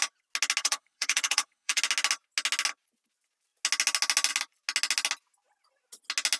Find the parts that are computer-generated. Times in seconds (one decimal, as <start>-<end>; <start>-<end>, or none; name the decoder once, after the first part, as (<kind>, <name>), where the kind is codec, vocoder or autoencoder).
0.6-1.8 (codec, HILCodec)